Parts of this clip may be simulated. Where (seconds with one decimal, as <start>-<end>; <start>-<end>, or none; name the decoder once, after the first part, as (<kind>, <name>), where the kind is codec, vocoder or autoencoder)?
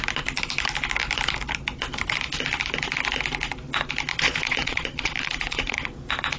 4.1-5.9 (vocoder, Vocos)